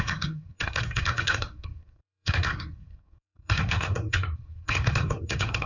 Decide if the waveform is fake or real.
fake